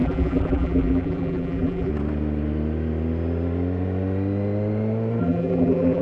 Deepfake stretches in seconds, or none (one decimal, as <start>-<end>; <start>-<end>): 0.0-1.9; 5.2-6.0